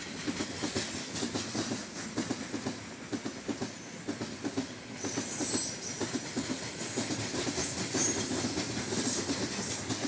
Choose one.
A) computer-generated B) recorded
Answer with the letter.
B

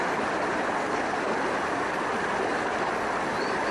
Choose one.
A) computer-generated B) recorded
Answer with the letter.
B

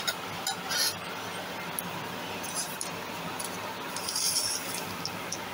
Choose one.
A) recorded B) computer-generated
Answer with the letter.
A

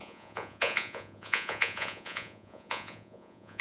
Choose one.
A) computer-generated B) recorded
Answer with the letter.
A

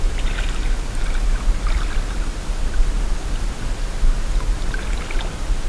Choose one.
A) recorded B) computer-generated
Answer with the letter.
A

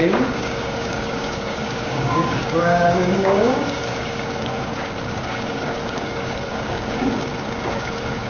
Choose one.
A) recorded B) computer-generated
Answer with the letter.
B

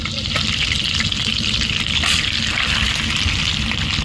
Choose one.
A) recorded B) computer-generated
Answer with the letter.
A